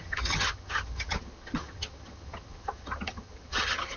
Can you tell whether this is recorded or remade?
remade